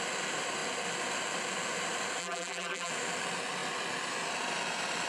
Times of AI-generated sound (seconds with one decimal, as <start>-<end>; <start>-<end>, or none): 2.2-2.9